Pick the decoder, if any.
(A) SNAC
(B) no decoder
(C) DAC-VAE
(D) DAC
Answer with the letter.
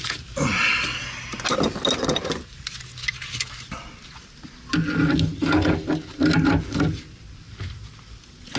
B